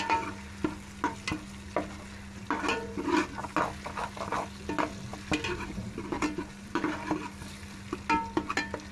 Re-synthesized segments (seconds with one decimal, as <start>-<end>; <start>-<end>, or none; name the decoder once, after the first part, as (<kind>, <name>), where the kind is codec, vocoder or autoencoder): none